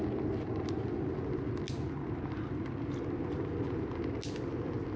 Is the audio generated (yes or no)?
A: no